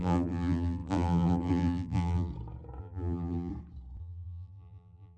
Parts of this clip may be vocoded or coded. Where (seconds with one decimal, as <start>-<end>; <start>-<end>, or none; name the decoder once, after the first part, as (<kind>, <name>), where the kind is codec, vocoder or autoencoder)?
0.0-2.3 (vocoder, BigVGAN v2); 2.8-3.5; 4.0-5.2